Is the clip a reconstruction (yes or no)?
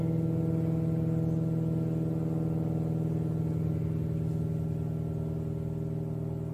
no